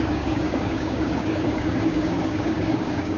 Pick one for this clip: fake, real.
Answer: fake